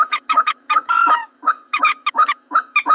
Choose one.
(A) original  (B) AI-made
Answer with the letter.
B